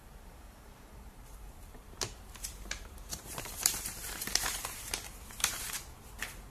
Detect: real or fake fake